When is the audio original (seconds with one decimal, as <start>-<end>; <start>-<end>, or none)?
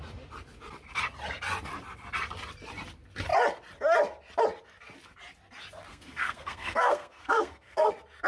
0.0-5.9; 7.9-8.3